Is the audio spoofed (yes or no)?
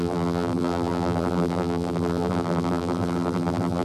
yes